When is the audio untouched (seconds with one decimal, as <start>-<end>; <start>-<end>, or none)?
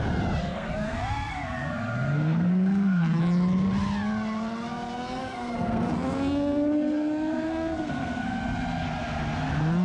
0.0-0.4; 3.2-5.2; 8.4-9.8